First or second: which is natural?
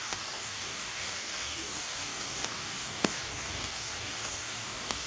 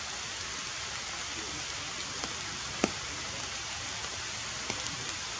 second